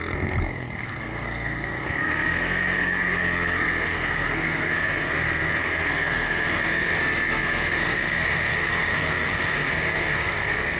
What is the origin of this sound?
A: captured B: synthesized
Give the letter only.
B